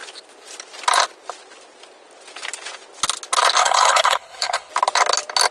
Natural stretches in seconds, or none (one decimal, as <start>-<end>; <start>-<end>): 0.0-3.6; 4.7-5.5